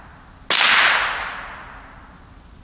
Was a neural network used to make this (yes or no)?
no